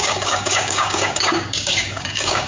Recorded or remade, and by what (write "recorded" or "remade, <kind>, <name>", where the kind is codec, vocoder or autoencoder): remade, codec, DAC